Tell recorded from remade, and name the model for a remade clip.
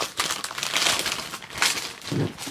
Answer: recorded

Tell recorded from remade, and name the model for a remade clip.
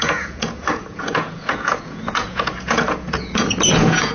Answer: remade, vocoder, Vocos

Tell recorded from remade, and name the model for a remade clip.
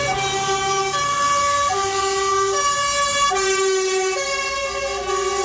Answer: recorded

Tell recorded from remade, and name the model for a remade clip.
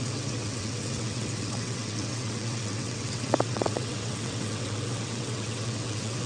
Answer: remade, vocoder, WaveNeXt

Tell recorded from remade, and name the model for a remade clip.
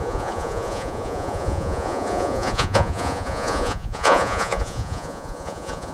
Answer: remade, vocoder, Vocos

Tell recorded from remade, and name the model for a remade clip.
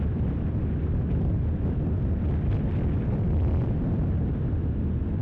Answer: remade, vocoder, BigVGAN v2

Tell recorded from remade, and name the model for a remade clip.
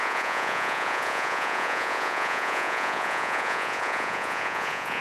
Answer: remade, vocoder, Vocos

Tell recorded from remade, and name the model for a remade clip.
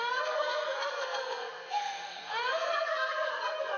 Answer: remade, codec, SNAC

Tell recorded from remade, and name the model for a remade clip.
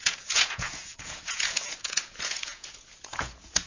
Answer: remade, vocoder, Vocos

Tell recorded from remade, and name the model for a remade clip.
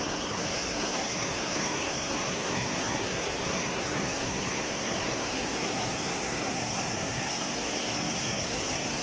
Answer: remade, codec, SNAC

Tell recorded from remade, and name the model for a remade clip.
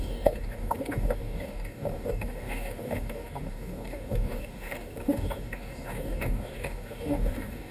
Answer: remade, codec, DAC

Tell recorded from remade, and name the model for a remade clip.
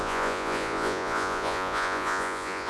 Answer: remade, vocoder, Vocos